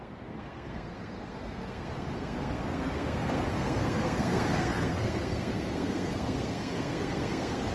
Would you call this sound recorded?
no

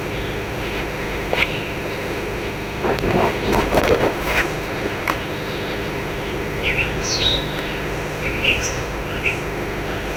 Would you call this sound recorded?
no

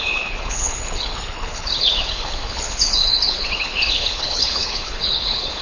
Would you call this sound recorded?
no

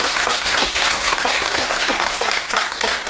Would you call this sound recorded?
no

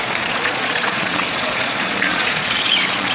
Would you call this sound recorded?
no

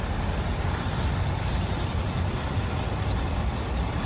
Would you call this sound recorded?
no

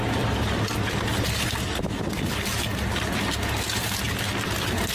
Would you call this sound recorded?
yes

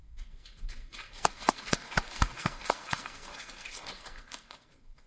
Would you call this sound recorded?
no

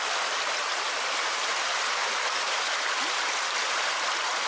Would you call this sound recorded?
yes